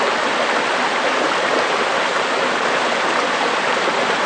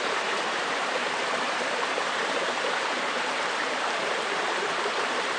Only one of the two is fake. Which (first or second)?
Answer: second